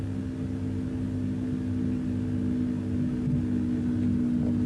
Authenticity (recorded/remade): recorded